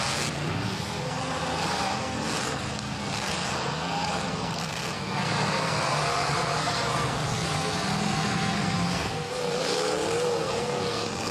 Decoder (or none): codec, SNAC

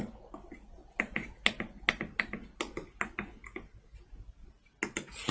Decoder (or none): none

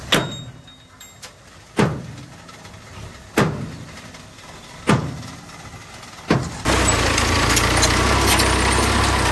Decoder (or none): none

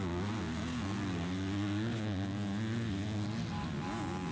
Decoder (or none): none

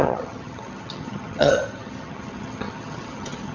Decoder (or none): vocoder, HiFi-GAN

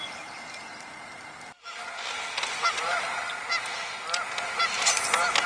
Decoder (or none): none